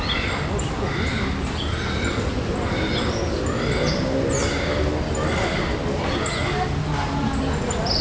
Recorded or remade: recorded